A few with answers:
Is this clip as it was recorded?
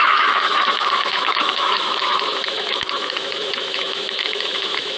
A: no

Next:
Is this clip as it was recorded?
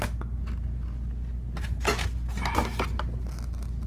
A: yes